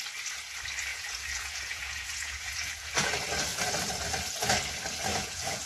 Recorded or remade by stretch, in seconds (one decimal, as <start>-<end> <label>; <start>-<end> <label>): 0.0-0.9 recorded; 0.9-3.1 remade; 3.1-5.1 recorded; 5.1-5.7 remade